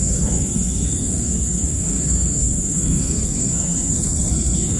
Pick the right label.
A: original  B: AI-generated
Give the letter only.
B